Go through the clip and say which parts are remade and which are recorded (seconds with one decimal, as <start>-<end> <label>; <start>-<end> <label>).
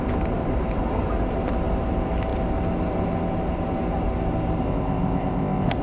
0.0-4.6 recorded; 4.6-5.8 remade